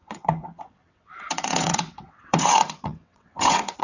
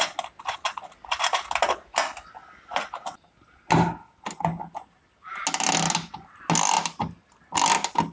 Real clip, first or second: second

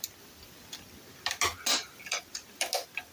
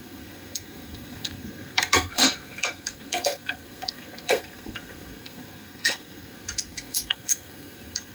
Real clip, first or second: first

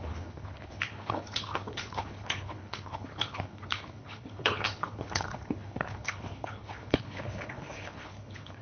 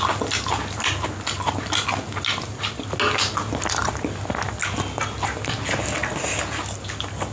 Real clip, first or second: second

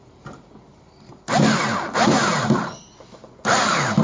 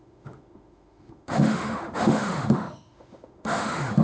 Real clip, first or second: first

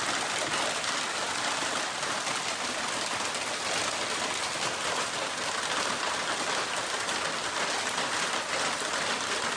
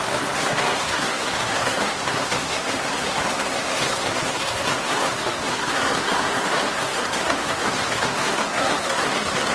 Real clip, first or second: first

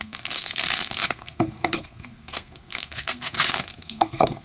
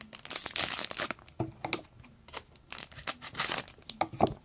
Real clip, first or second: second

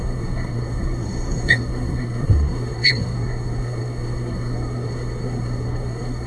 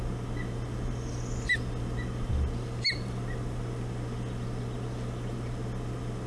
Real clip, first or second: second